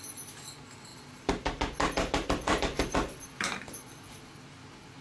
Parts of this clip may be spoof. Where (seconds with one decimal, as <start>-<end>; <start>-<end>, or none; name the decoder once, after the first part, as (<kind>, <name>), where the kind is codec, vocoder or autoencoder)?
0.9-3.6 (vocoder, BigVGAN v2)